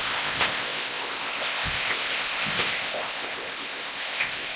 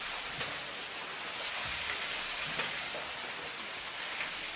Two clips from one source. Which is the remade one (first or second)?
first